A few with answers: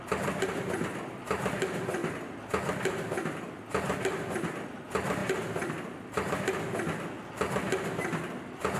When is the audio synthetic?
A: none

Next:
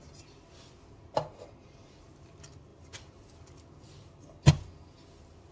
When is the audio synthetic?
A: none

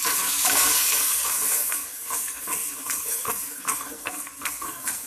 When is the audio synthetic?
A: 0.0-5.1 (codec, SNAC)

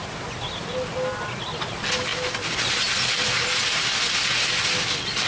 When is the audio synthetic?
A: none

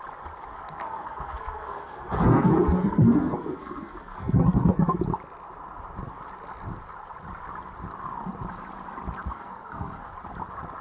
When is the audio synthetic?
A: 0.5-5.0 (codec, SNAC); 9.3-10.1

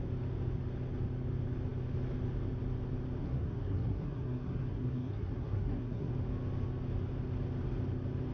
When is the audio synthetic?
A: 3.2-6.1 (codec, SNAC)